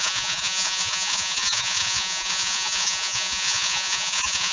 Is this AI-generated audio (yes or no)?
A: yes